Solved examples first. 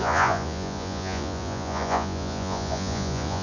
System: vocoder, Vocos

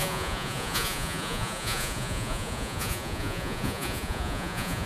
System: vocoder, Vocos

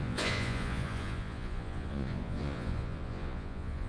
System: vocoder, Vocos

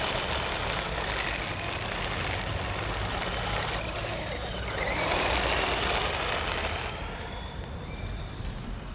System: none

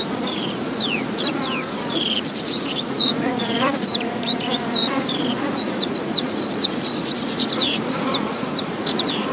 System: vocoder, Vocos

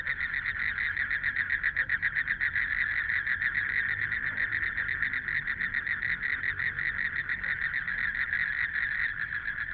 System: none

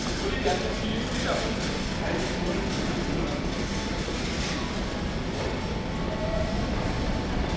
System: none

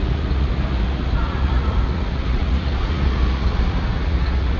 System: vocoder, Vocos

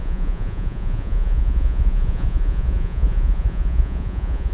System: vocoder, Vocos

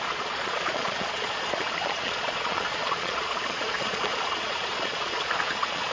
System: vocoder, Vocos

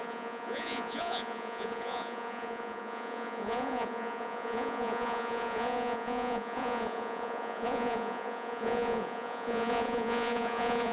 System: vocoder, Vocos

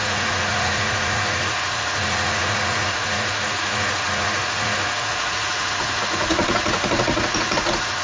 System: vocoder, Vocos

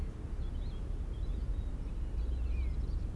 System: none